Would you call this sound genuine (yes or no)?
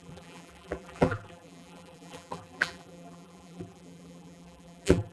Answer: no